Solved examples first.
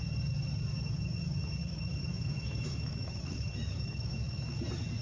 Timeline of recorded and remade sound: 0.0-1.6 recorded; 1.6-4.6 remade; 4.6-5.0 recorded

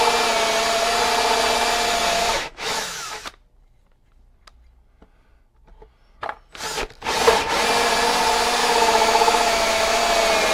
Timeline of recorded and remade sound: 0.0-2.1 recorded; 2.1-3.2 remade; 3.2-8.6 recorded; 8.6-10.0 remade; 10.0-10.5 recorded

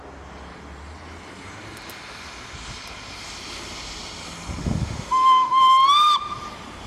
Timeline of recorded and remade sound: 0.0-4.6 recorded; 4.6-5.6 remade; 5.6-6.9 recorded